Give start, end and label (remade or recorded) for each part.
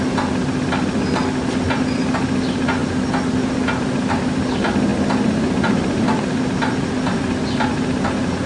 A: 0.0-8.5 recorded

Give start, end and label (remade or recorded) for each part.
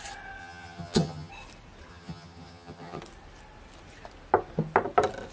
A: 0.0-0.4 recorded; 0.4-1.3 remade; 1.3-1.9 recorded; 1.9-3.0 remade; 3.0-5.3 recorded